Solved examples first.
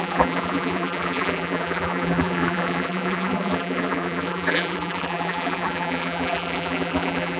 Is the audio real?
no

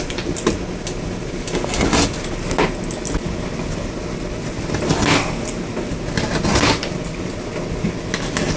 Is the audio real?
yes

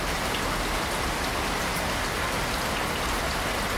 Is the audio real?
yes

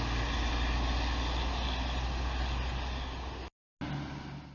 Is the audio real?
yes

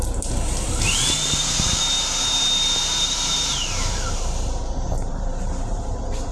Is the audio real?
no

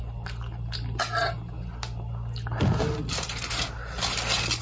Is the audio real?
yes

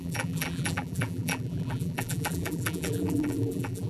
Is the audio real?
no